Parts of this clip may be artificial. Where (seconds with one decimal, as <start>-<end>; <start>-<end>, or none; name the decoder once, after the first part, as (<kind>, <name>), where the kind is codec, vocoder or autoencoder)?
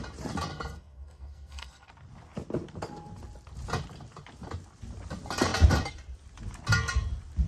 0.5-1.9 (codec, SNAC)